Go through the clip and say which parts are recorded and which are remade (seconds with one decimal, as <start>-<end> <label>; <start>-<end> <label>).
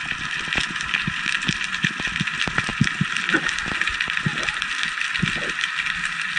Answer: 0.0-6.4 recorded